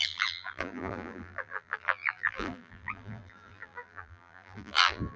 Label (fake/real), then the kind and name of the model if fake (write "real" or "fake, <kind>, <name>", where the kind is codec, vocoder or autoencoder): fake, vocoder, BigVGAN v2